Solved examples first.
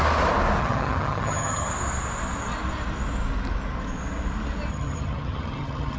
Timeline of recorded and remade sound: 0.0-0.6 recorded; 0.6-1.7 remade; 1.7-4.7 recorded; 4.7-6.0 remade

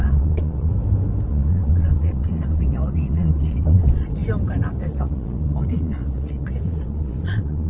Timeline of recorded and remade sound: 0.0-0.7 remade; 0.7-1.3 recorded; 1.3-4.2 remade; 4.2-4.8 recorded; 4.8-7.7 remade

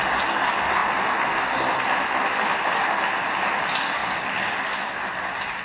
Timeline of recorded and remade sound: 0.0-4.0 recorded; 4.0-4.6 remade; 4.6-5.6 recorded

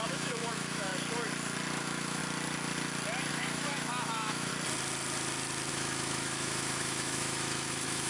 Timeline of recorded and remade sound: 0.0-0.9 remade; 0.9-1.8 recorded; 1.8-2.2 remade; 2.2-3.3 recorded; 3.3-4.5 remade; 4.5-5.7 recorded; 5.7-8.1 remade

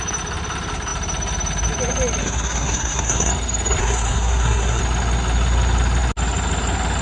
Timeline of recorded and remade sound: 0.0-2.2 recorded; 2.2-3.3 remade; 3.3-3.8 recorded; 3.8-4.8 remade; 4.8-7.0 recorded